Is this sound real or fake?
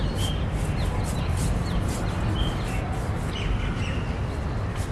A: real